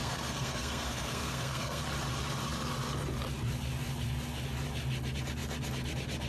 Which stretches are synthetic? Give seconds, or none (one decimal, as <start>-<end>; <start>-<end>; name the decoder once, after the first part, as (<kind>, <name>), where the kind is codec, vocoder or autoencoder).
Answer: 0.0-1.8 (codec, SNAC)